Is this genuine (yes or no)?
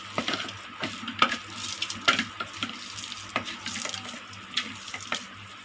yes